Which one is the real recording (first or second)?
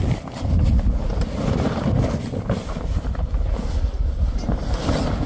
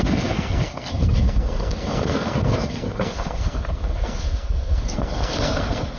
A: first